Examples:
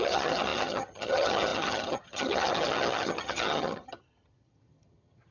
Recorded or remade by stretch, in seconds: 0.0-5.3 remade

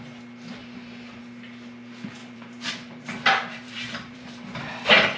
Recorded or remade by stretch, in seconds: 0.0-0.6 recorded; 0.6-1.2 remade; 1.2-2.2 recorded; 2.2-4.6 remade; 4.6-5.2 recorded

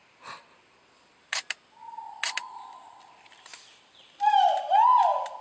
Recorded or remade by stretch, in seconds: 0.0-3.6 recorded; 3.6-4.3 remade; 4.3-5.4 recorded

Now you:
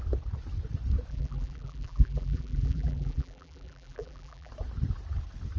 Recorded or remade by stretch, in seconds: 0.0-1.1 recorded; 1.1-4.5 remade; 4.5-5.6 recorded

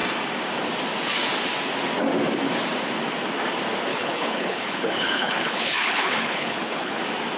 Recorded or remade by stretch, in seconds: 0.0-3.9 recorded; 3.9-7.0 remade; 7.0-7.4 recorded

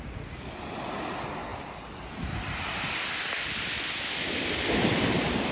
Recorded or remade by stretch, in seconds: 0.0-1.5 recorded; 1.5-4.8 remade; 4.8-5.5 recorded

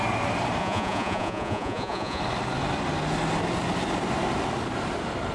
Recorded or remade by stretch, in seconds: 0.0-0.6 recorded; 0.6-2.2 remade; 2.2-5.3 recorded

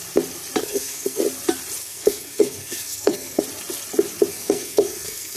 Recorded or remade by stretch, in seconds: 0.0-0.6 recorded; 0.6-1.2 remade; 1.2-1.8 recorded; 1.8-3.4 remade; 3.4-4.3 recorded; 4.3-5.4 remade